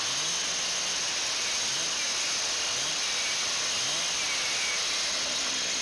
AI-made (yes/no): no